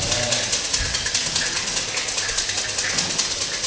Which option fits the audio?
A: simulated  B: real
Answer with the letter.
B